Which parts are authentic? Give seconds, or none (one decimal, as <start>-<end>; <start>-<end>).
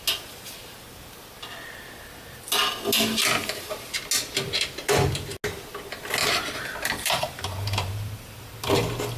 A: 0.0-3.4; 4.0-6.2; 8.4-9.2